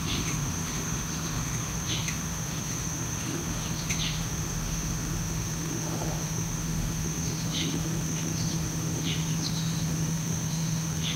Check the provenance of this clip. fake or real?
fake